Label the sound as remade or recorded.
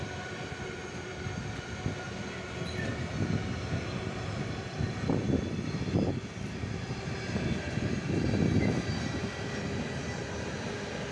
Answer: recorded